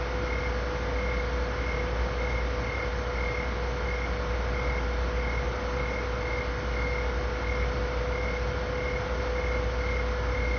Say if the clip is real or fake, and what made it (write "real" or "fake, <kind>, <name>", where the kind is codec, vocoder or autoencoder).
real